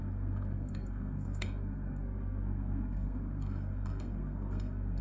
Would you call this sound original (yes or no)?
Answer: no